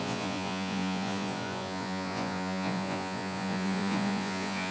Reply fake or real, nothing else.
fake